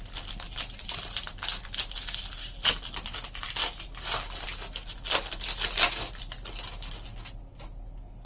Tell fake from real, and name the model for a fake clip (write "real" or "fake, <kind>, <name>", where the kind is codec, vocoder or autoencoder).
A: real